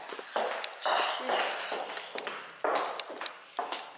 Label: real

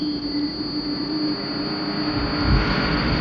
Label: real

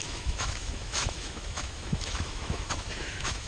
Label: fake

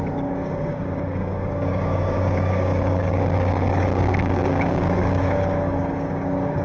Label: fake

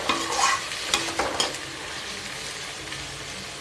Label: real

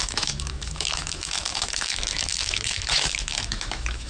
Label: fake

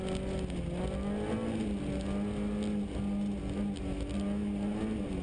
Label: real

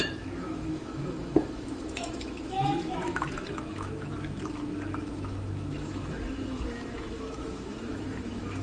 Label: fake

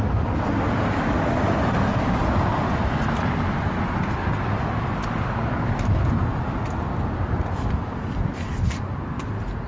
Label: real